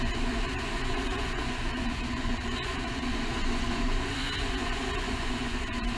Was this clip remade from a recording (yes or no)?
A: yes